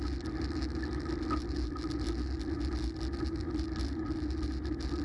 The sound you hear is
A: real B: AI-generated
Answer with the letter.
A